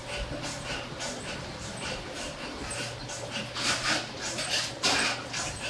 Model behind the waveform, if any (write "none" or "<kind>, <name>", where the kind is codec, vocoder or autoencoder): vocoder, BigVGAN v2